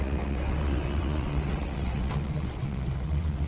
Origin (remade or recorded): remade